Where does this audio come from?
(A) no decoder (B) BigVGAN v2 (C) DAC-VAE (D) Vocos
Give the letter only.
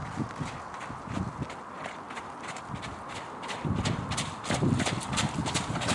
A